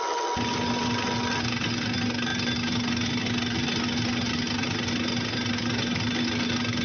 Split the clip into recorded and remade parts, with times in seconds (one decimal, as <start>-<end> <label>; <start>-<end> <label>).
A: 0.0-6.8 recorded